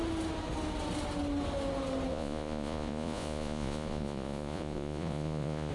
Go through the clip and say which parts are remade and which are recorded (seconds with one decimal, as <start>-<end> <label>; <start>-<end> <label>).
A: 0.0-2.1 recorded; 2.1-5.7 remade